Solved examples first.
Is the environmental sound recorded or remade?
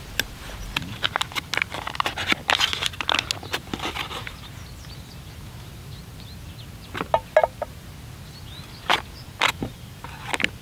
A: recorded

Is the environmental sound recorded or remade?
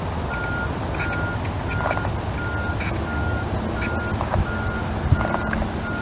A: recorded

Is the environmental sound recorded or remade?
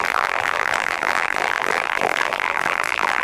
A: remade